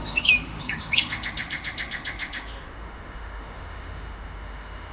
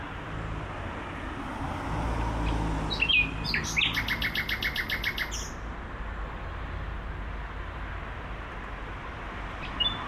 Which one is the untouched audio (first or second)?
second